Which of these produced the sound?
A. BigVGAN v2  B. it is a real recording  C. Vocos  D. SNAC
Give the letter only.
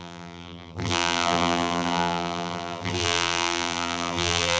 A